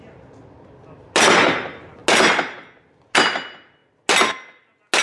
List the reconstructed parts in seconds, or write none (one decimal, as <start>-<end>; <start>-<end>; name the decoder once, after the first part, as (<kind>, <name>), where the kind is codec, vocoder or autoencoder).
none